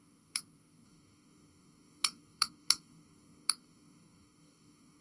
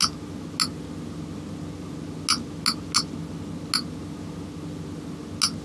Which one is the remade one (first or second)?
first